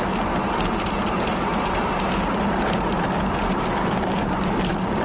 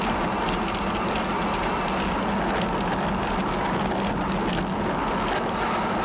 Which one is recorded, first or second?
second